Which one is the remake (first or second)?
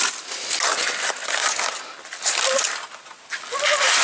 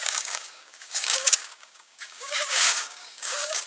second